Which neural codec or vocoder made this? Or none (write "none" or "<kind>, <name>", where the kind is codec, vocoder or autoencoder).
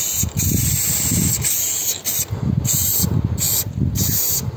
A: none